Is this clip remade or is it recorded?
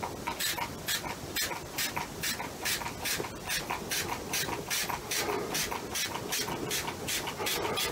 recorded